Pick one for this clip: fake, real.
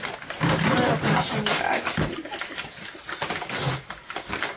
real